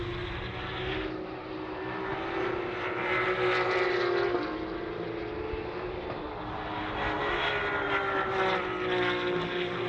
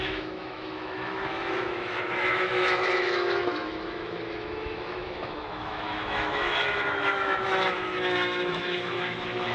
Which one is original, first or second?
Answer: first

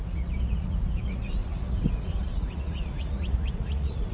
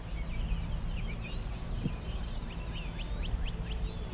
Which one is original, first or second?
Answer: second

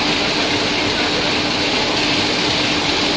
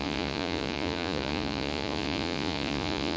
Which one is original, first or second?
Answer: first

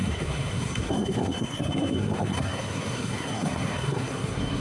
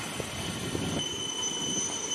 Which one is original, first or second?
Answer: second